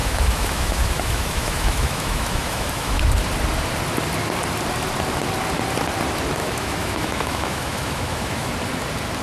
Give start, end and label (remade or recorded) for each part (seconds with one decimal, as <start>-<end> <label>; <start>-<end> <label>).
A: 0.0-3.0 remade; 3.0-6.4 recorded; 6.4-8.5 remade; 8.5-9.2 recorded